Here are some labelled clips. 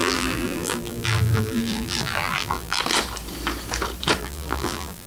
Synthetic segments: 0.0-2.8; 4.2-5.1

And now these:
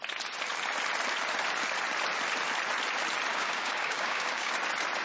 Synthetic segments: 3.3-4.5